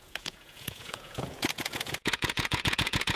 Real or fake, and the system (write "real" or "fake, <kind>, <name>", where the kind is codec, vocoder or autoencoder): fake, vocoder, Vocos